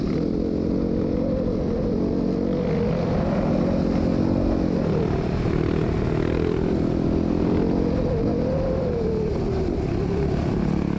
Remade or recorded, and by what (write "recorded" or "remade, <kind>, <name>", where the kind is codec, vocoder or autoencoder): recorded